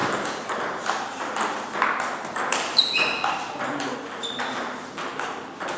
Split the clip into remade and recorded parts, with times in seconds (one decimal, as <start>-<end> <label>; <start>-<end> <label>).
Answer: 0.0-5.8 recorded